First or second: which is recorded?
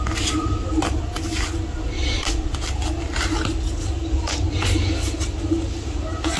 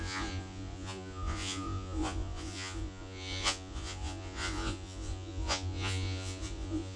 first